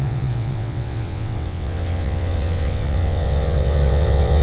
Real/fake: fake